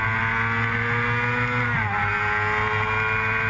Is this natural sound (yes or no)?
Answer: yes